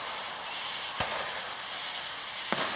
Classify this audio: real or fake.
real